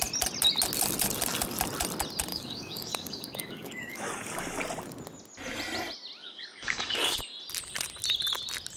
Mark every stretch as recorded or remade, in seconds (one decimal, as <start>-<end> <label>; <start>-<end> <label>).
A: 0.0-2.3 recorded; 2.3-4.6 remade; 4.6-6.2 recorded; 6.2-7.2 remade; 7.2-8.8 recorded